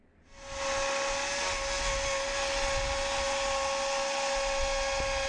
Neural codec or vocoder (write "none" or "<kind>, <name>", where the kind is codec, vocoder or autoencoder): none